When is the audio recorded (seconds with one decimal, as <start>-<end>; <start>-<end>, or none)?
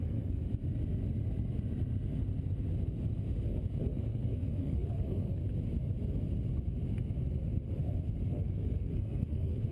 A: 0.4-3.8; 5.4-8.3